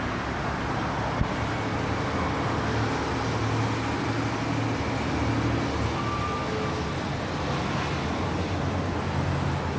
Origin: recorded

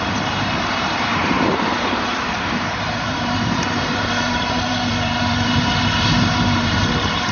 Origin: remade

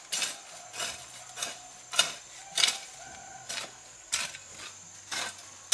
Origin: recorded